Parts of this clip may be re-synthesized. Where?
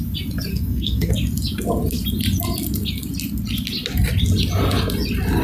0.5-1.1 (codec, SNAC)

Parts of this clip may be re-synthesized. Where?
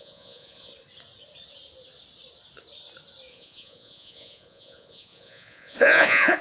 0.0-0.7 (vocoder, Vocos); 3.3-6.4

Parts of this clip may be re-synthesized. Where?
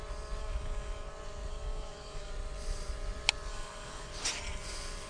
0.4-1.1 (codec, DAC); 1.5-2.3; 3.5-4.1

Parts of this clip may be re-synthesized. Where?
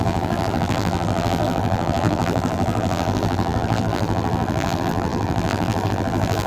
0.0-6.5 (vocoder, BigVGAN v2)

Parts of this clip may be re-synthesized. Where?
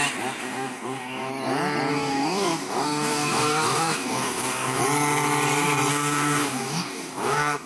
0.4-1.3 (codec, DAC); 1.9-4.8; 5.9-7.7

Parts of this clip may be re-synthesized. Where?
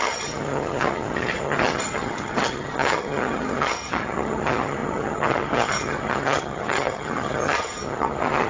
0.0-8.5 (vocoder, HiFi-GAN)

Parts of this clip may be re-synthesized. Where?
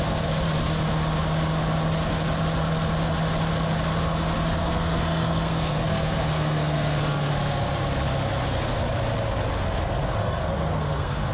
4.6-7.3 (codec, SNAC); 10.2-11.3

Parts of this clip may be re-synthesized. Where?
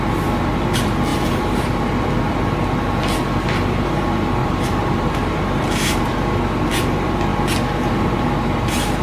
1.1-1.6 (vocoder, BigVGAN v2); 4.4-6.1